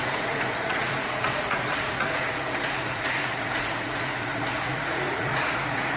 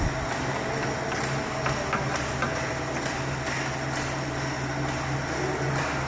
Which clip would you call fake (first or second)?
first